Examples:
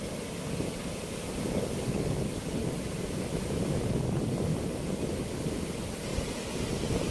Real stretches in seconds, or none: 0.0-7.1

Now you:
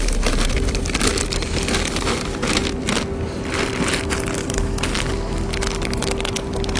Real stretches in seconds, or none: 0.0-6.8

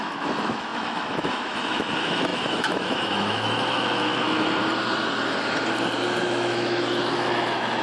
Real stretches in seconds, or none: 4.6-6.2

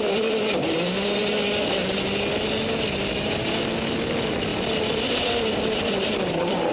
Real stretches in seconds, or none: 0.0-4.5

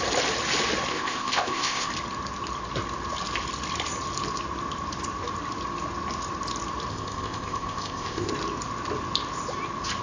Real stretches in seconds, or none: 0.0-0.9; 1.9-6.9; 8.3-10.0

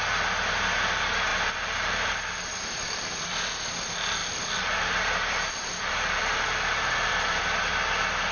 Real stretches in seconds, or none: 0.0-1.3; 3.1-4.2; 7.4-8.3

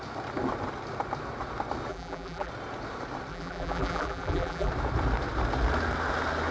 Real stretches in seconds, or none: 0.0-1.9; 2.5-3.3; 4.7-6.5